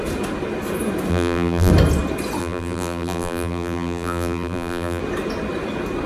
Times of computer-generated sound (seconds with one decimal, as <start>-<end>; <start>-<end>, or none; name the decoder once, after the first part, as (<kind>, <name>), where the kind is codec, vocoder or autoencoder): 1.1-1.7 (vocoder, BigVGAN v2); 2.4-5.0